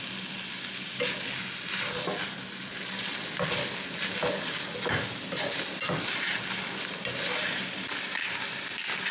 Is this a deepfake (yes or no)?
no